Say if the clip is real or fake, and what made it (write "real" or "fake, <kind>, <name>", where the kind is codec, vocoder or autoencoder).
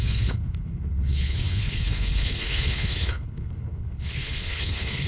fake, codec, HILCodec